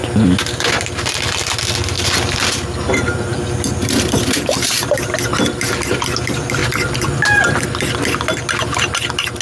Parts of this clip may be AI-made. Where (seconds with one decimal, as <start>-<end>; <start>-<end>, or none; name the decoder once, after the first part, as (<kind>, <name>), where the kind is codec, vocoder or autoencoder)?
3.3-5.4 (vocoder, BigVGAN v2); 6.6-7.6